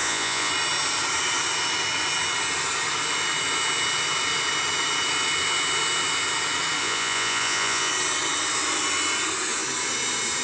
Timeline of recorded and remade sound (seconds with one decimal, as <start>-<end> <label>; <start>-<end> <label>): 0.0-0.5 remade; 0.5-6.8 recorded; 6.8-7.9 remade; 7.9-10.4 recorded